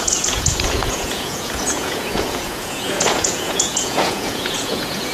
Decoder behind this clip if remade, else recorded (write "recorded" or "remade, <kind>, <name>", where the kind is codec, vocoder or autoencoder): remade, vocoder, Vocos